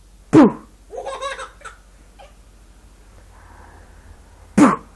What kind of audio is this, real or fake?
real